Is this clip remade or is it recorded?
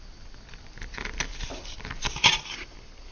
recorded